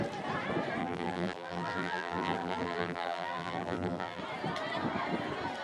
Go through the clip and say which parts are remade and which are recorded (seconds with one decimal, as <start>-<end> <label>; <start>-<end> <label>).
0.0-0.8 recorded; 0.8-4.2 remade; 4.2-5.6 recorded

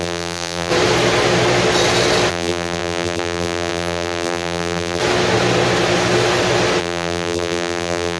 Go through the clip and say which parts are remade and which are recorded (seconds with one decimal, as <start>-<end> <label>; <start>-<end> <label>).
0.0-0.7 remade; 0.7-2.3 recorded; 2.3-5.0 remade; 5.0-6.8 recorded; 6.8-8.2 remade